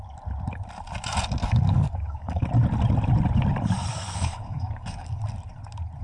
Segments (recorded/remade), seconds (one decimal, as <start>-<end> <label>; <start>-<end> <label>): 0.0-1.4 recorded; 1.4-2.5 remade; 2.5-3.9 recorded; 3.9-5.2 remade; 5.2-6.0 recorded